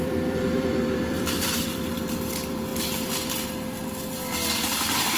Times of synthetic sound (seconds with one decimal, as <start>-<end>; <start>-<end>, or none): 0.0-2.7; 4.3-5.2